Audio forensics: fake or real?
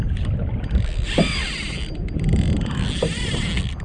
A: real